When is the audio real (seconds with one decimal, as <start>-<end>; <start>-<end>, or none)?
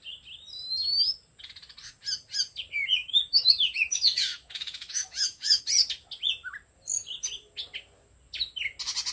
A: 0.0-3.0; 5.6-9.1